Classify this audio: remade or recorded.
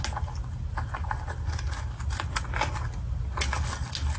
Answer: recorded